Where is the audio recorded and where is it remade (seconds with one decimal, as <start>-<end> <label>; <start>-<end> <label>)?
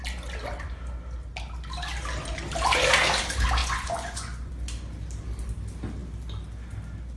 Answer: 0.0-3.6 recorded; 3.6-4.5 remade; 4.5-7.2 recorded